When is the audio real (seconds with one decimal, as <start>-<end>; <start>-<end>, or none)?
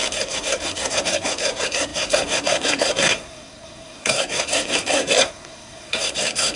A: none